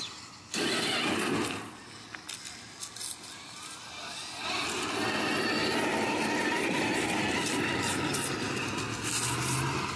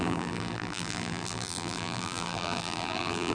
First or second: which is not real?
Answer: second